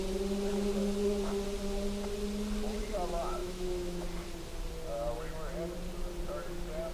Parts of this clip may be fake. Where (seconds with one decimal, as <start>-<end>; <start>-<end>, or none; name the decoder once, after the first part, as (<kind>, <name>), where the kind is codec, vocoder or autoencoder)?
3.4-4.0 (autoencoder, DAC-VAE)